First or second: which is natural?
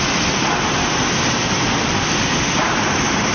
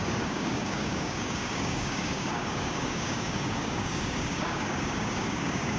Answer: first